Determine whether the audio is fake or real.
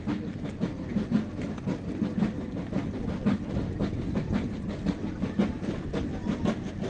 real